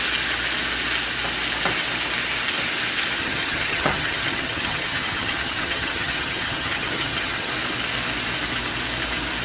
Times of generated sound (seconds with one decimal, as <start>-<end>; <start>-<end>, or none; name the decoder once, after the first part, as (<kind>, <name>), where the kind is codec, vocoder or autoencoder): 3.2-7.5 (vocoder, HiFi-GAN)